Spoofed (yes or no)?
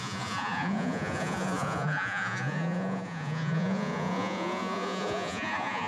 yes